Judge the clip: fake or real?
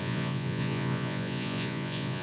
fake